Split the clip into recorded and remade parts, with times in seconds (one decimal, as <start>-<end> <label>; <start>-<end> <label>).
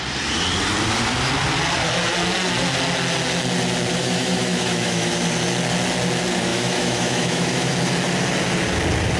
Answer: 0.0-4.0 recorded; 4.0-5.1 remade; 5.1-6.5 recorded; 6.5-7.7 remade; 7.7-9.2 recorded